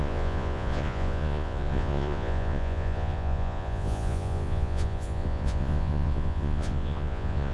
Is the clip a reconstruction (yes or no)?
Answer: yes